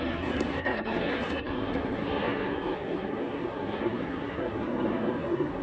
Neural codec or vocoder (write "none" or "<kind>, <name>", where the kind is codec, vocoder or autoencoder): codec, SNAC